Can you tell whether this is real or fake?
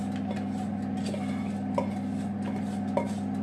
real